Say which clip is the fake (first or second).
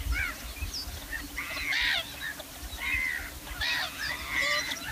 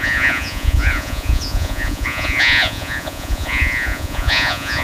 second